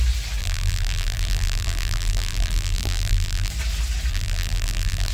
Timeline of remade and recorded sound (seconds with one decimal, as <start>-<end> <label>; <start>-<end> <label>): 0.0-0.4 recorded; 0.4-3.5 remade; 3.5-4.1 recorded; 4.1-5.1 remade